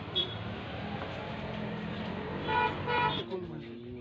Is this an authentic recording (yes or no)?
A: yes